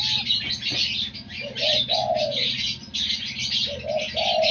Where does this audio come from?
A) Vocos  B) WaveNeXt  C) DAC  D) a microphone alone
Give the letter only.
D